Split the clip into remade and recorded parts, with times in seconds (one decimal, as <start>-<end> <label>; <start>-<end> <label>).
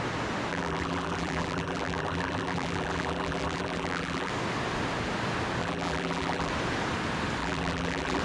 0.0-0.5 recorded; 0.5-4.3 remade; 4.3-5.6 recorded; 5.6-6.5 remade; 6.5-7.4 recorded; 7.4-8.2 remade